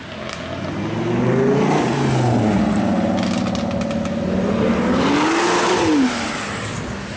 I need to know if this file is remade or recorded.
recorded